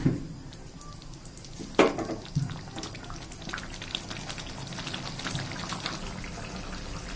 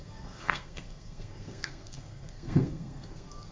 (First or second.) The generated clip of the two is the second